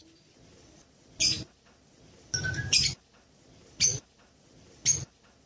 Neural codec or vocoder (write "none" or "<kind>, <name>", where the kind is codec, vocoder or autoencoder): none